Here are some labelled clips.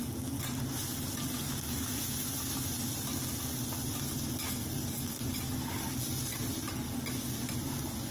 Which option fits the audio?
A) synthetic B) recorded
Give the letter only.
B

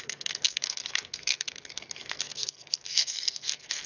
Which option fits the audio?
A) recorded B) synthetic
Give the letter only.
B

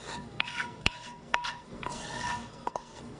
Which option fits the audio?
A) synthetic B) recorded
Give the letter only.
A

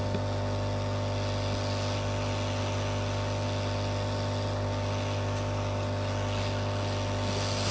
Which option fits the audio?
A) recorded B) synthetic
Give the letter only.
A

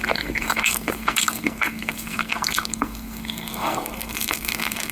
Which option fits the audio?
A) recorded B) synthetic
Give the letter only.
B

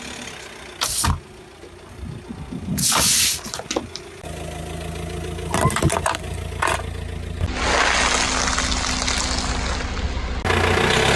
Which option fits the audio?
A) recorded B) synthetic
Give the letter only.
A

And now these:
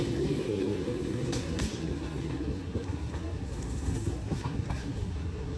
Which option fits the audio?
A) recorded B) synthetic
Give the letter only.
B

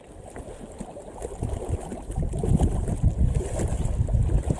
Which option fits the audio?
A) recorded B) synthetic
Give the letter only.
A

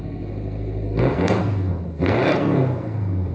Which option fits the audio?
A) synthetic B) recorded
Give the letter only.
A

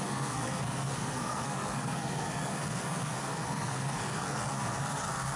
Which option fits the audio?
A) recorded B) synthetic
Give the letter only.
B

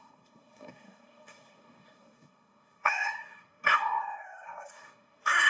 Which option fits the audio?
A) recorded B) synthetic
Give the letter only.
B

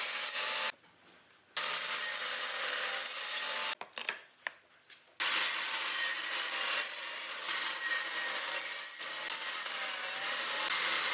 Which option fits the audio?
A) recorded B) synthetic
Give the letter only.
A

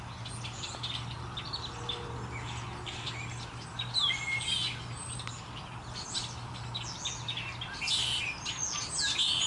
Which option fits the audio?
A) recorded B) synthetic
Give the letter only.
A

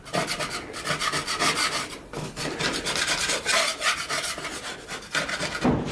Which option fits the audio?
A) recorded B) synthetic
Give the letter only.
A